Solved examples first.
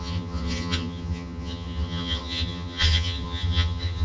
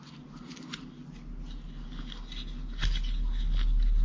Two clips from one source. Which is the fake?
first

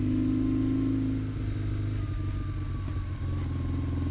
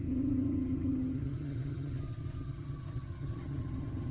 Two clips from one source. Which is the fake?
second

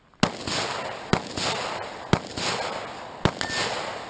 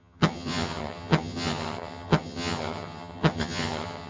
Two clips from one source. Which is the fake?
second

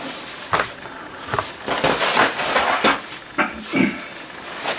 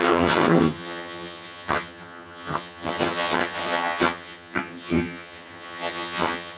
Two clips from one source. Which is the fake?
second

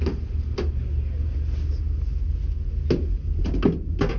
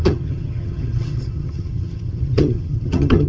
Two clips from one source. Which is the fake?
second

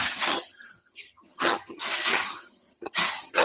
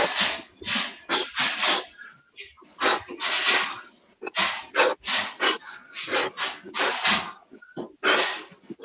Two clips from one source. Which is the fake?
first